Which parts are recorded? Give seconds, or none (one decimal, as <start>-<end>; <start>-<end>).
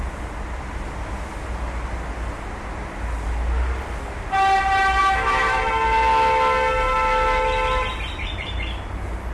0.0-5.0; 5.6-9.3